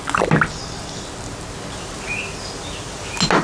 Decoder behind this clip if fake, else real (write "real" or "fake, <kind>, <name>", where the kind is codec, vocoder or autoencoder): real